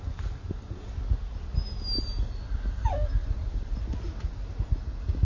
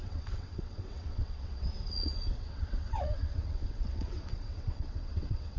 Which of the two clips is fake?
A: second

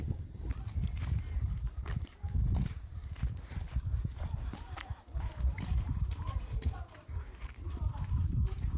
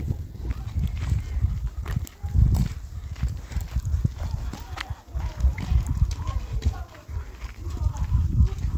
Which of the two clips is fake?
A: first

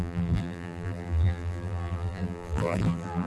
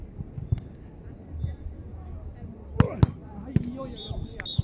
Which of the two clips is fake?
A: first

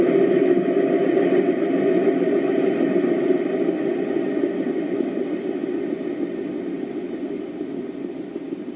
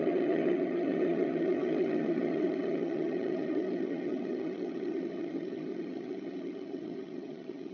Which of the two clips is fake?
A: second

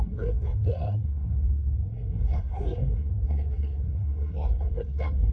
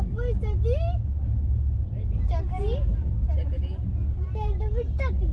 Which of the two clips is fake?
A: first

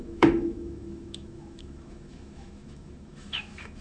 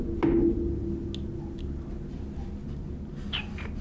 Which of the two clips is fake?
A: first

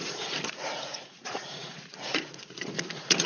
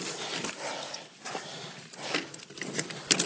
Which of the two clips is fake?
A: first